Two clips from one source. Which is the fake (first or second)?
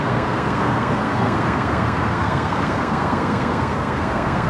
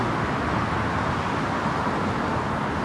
first